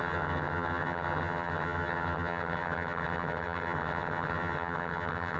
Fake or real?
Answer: fake